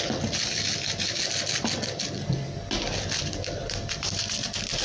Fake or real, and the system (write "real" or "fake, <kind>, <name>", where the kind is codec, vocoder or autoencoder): real